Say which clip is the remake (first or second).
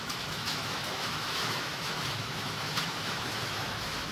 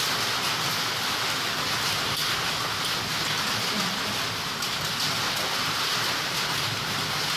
first